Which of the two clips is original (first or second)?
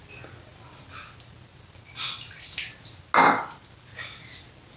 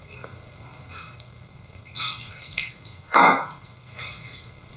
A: first